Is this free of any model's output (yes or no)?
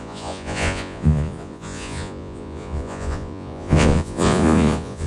no